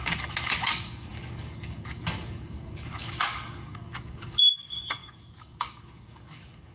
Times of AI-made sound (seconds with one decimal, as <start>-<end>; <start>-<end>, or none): 0.0-6.7